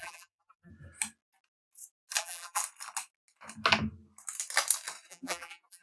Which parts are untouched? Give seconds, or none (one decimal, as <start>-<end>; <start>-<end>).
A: 0.7-2.2; 2.6-5.1